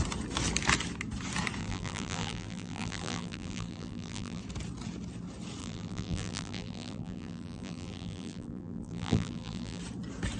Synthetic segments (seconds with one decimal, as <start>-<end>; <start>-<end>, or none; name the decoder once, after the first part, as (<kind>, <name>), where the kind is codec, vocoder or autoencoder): 1.6-4.4 (vocoder, BigVGAN v2); 5.6-9.8